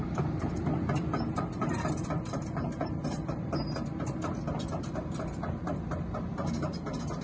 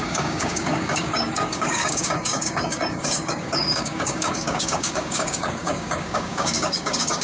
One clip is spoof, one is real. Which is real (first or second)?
first